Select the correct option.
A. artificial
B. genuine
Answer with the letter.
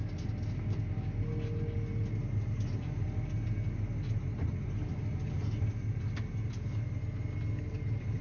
B